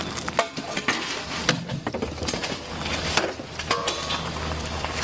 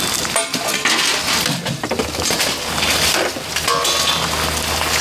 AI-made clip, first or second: first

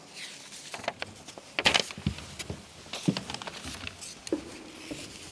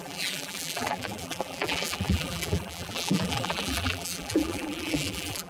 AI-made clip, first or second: second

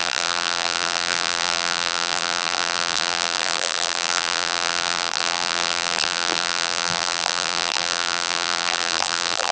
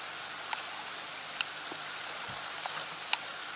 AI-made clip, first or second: first